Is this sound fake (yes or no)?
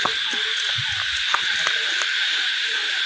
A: yes